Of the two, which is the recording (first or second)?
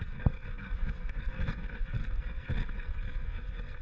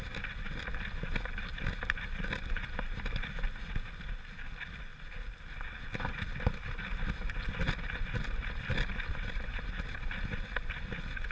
second